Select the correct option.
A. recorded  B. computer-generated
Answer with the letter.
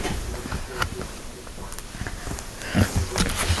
A